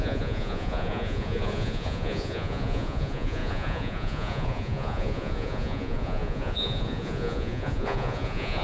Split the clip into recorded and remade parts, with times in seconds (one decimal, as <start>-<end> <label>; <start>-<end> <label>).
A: 0.0-8.6 remade